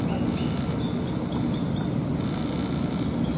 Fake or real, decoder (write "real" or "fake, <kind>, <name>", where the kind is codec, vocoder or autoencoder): real